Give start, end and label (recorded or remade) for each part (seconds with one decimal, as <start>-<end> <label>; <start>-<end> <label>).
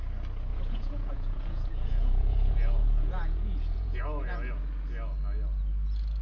0.0-0.5 recorded; 0.5-4.0 remade; 4.0-6.2 recorded